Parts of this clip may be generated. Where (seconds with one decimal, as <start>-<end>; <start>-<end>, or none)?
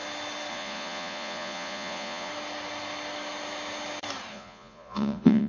0.5-2.3; 4.3-5.5